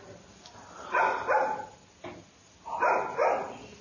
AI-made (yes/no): no